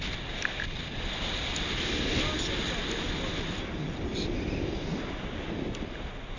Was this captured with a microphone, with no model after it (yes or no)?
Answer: yes